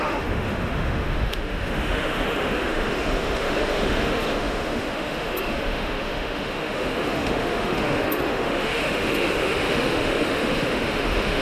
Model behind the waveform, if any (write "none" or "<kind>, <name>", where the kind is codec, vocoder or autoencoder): autoencoder, DAC-VAE